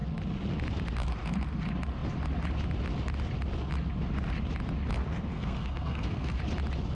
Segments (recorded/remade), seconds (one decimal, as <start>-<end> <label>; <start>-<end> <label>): 0.0-5.3 recorded; 5.3-6.4 remade; 6.4-6.9 recorded